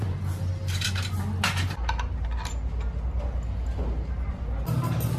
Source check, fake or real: real